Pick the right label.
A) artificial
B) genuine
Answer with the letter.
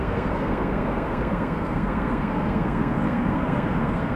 A